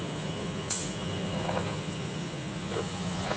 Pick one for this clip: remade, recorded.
remade